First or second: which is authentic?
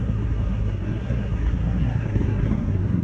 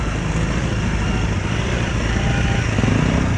second